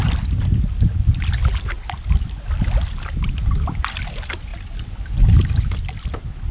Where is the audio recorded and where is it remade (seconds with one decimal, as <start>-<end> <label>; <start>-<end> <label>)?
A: 0.0-6.5 recorded